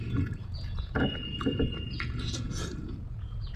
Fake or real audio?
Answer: fake